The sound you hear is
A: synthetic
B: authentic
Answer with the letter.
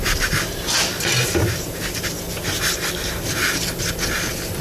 A